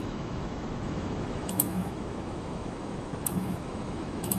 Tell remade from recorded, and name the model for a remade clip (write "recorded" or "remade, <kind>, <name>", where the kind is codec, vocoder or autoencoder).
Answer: remade, autoencoder, DAC-VAE